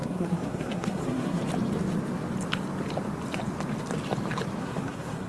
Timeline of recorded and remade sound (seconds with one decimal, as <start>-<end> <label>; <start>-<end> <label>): 0.0-1.4 remade; 1.4-4.6 recorded; 4.6-5.3 remade